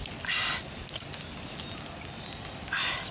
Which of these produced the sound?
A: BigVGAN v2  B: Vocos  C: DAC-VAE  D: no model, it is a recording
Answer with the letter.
D